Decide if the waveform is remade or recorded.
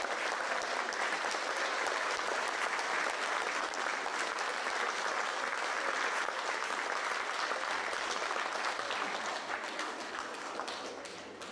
recorded